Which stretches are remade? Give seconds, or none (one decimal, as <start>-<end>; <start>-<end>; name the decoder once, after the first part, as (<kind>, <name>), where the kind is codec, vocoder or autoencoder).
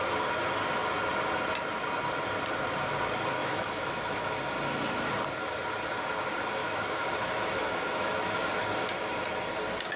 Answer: 3.4-4.3 (autoencoder, DAC-VAE); 6.6-8.4